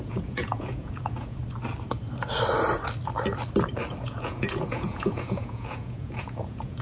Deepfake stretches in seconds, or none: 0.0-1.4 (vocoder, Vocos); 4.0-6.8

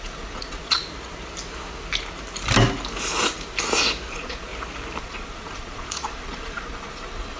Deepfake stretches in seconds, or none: 0.0-0.8 (vocoder, Vocos); 4.1-4.5; 5.0-7.4

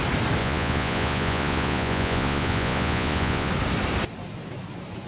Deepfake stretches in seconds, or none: 0.4-3.5 (vocoder, Vocos)

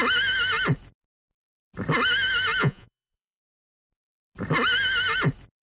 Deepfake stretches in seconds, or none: 2.6-3.4 (vocoder, Vocos)

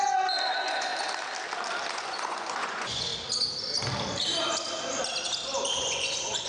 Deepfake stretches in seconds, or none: 0.0-0.9 (vocoder, Vocos); 1.9-3.1; 5.8-6.5

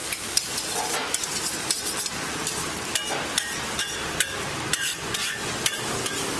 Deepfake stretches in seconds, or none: 4.9-5.5 (vocoder, Vocos)

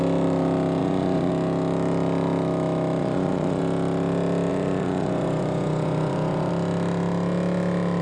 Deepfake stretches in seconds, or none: 0.8-1.3 (vocoder, Vocos); 3.0-3.6; 4.5-6.5